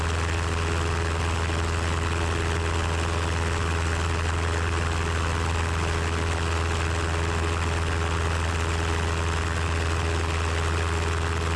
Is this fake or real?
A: real